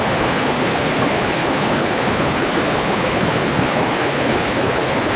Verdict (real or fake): fake